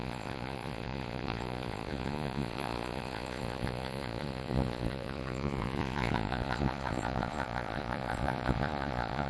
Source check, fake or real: fake